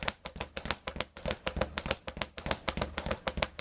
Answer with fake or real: real